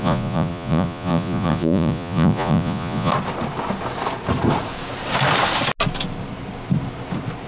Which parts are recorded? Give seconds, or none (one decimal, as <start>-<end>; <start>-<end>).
3.1-7.5